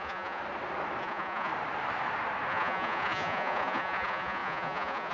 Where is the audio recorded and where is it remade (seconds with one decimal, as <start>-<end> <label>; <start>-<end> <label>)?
0.0-0.4 remade; 0.4-1.0 recorded; 1.0-1.5 remade; 1.5-2.5 recorded; 2.5-5.1 remade